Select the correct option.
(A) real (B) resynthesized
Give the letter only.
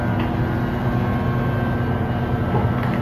A